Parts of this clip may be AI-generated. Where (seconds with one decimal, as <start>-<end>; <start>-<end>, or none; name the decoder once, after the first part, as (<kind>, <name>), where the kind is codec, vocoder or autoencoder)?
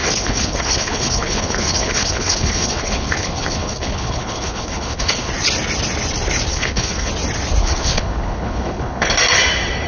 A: 0.0-5.3 (codec, HILCodec); 6.5-7.1; 7.6-9.1